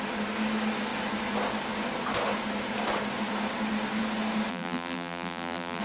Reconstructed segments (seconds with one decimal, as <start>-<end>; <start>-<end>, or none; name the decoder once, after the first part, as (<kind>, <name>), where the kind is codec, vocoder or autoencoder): 4.5-5.8 (vocoder, BigVGAN v2)